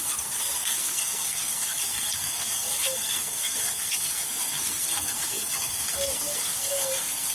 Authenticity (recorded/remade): remade